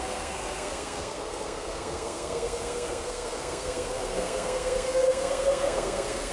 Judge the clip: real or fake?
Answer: fake